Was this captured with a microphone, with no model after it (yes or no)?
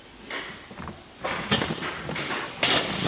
yes